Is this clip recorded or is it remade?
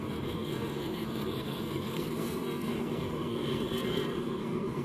remade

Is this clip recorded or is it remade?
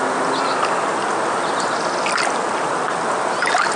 recorded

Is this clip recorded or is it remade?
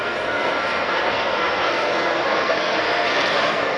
remade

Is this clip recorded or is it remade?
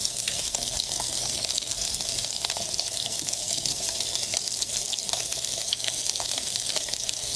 remade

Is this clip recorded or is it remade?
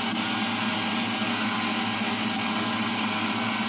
recorded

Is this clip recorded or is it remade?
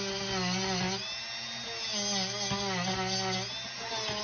recorded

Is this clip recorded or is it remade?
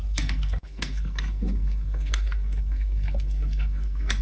remade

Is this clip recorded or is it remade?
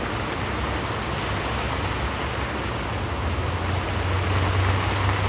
recorded